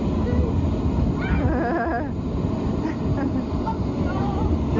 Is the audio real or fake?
real